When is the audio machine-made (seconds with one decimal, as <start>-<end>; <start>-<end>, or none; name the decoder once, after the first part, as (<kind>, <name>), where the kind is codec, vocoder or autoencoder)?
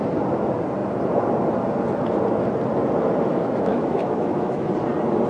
3.3-4.7 (autoencoder, DAC-VAE)